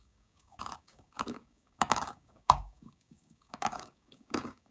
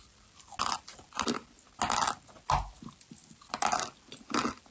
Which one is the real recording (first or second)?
second